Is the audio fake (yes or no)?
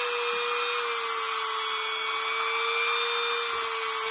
no